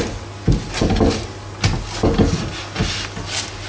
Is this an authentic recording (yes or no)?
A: yes